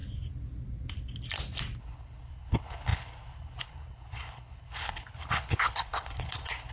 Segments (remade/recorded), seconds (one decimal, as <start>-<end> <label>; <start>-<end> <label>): 0.0-1.8 recorded; 1.8-6.7 remade